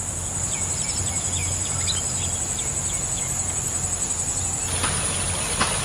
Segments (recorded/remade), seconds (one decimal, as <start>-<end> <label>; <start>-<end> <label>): 0.0-5.8 recorded